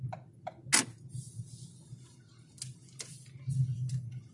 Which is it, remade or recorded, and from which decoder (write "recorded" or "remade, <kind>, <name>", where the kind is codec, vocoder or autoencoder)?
recorded